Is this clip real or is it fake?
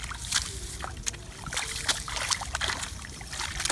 real